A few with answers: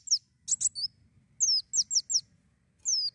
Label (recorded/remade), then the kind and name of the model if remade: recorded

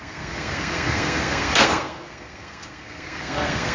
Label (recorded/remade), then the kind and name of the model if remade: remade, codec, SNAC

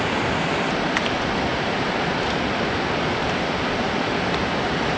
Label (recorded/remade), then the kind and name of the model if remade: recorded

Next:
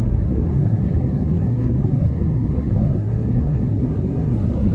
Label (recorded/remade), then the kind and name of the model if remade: remade, codec, SNAC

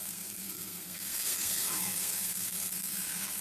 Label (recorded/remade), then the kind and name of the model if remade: remade, codec, SNAC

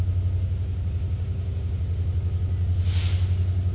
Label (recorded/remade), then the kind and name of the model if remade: recorded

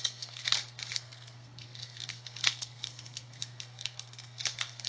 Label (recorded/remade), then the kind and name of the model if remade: remade, codec, SNAC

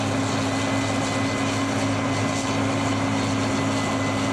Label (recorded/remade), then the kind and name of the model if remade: recorded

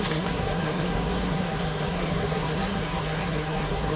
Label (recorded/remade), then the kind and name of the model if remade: remade, codec, SNAC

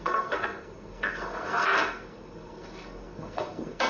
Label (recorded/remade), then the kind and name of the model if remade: remade, codec, SNAC